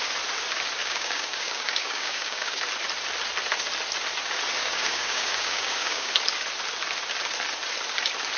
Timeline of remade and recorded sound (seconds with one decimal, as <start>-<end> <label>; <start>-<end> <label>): 0.0-0.8 recorded; 0.8-2.6 remade; 2.6-4.6 recorded; 4.6-6.1 remade; 6.1-8.4 recorded